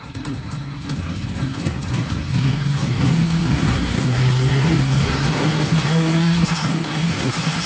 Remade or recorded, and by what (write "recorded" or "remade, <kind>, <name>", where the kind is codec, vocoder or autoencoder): remade, codec, SNAC